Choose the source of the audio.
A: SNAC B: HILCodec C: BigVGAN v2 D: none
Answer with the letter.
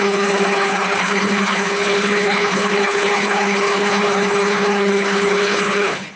B